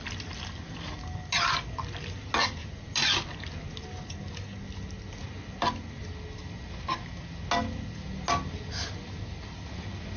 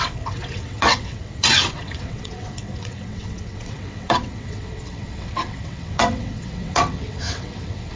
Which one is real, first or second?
first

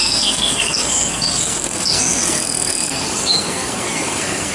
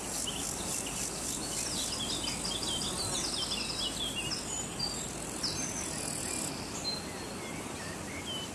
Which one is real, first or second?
second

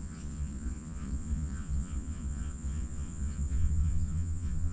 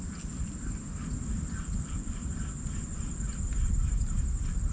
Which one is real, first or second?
second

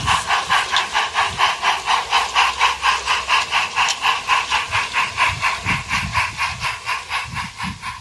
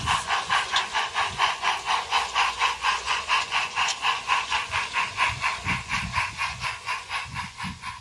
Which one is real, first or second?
first